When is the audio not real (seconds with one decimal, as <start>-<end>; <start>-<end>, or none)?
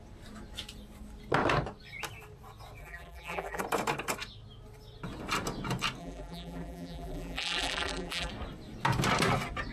2.8-3.6; 6.0-8.3